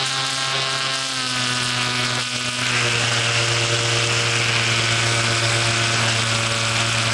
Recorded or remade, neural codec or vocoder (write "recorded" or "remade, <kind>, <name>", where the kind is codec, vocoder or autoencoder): recorded